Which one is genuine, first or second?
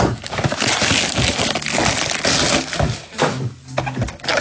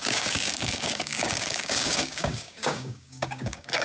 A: first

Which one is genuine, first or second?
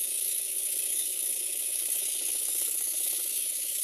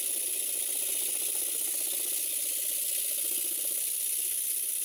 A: second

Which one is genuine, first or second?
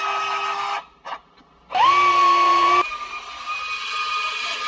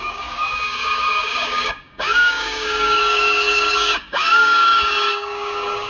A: first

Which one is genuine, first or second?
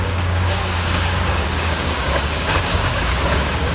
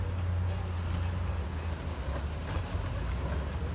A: second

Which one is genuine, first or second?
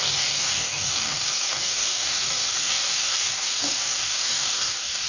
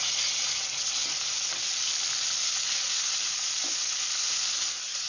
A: second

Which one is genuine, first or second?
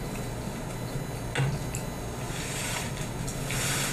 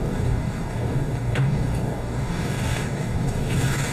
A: first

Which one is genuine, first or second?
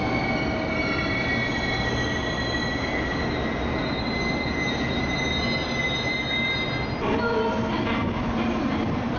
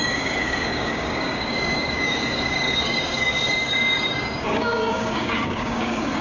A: first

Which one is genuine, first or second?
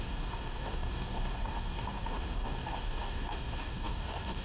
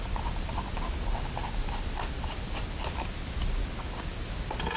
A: second